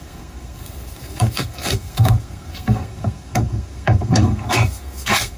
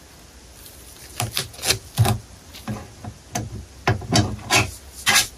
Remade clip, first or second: first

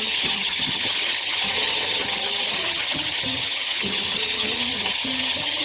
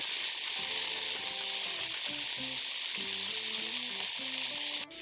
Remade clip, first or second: first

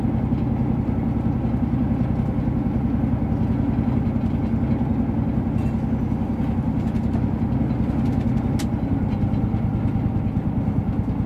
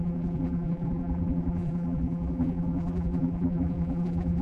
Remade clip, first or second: second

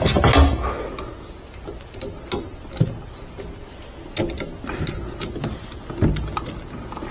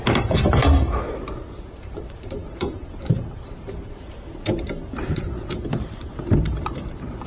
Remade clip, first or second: second